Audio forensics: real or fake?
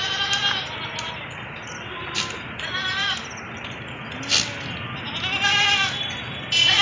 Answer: real